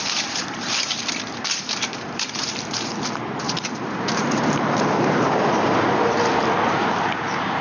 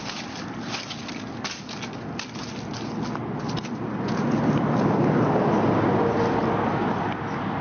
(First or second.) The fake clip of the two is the first